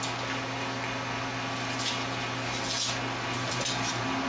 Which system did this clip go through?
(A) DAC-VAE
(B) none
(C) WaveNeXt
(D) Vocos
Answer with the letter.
B